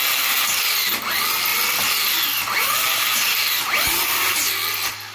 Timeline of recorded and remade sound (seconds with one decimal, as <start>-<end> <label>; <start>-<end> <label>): 0.0-5.1 recorded